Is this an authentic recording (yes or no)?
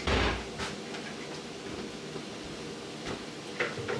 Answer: yes